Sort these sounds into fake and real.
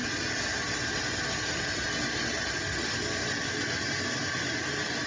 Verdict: real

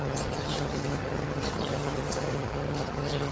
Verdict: fake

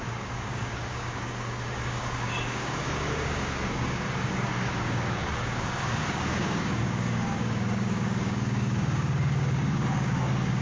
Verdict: fake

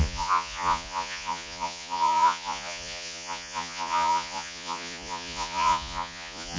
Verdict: fake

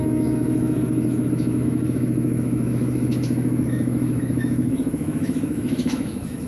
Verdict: fake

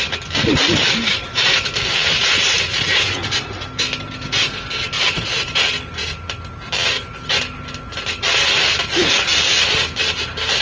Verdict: real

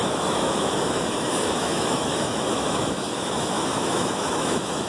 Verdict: fake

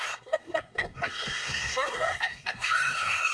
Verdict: fake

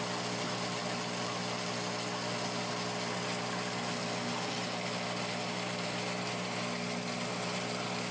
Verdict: real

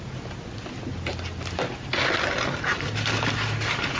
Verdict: real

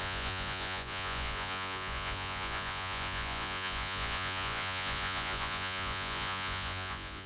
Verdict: fake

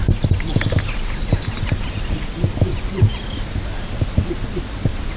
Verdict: real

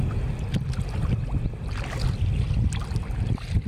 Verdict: real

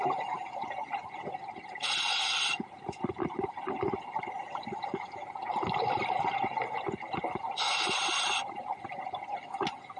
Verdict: real